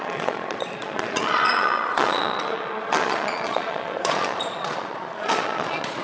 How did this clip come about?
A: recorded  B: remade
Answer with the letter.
B